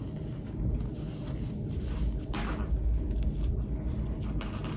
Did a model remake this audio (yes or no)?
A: no